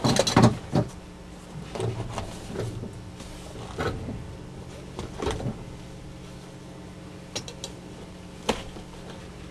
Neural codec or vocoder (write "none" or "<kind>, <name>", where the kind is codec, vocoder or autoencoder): none